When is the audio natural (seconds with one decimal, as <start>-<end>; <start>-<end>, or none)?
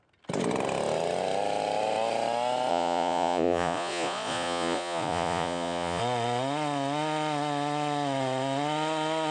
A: 0.0-2.7; 6.0-9.3